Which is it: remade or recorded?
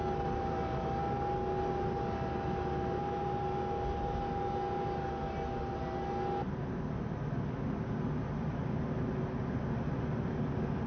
recorded